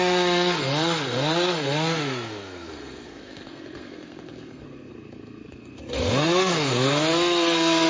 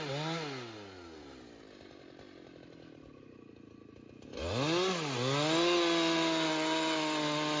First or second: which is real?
second